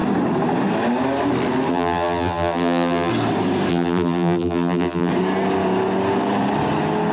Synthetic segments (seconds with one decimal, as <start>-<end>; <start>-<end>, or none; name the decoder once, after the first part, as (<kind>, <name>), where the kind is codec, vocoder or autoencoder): 1.7-3.1 (vocoder, BigVGAN v2); 3.7-5.1